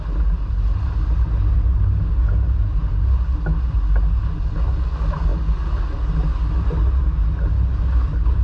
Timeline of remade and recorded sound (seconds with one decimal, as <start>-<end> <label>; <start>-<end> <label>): 0.0-8.4 recorded

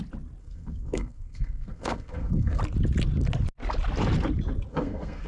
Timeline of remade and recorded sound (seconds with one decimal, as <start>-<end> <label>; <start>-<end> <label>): 0.0-0.4 recorded; 0.4-2.6 remade; 2.6-4.7 recorded; 4.7-5.3 remade

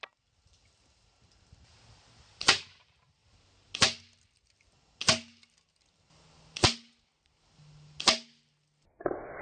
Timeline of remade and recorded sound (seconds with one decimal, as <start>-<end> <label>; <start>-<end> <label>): 0.0-9.4 recorded

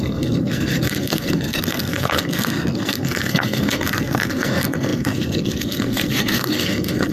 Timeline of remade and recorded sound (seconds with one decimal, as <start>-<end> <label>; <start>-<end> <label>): 0.0-7.1 remade